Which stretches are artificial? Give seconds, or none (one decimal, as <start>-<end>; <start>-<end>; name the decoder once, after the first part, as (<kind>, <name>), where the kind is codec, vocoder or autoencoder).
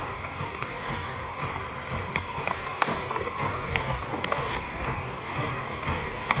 0.0-1.4 (codec, DAC); 2.1-6.4